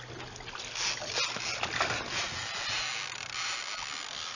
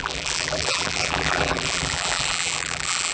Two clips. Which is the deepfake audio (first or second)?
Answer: second